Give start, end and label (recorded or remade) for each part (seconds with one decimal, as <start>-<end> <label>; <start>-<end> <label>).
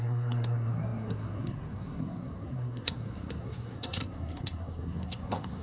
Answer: 0.0-5.6 remade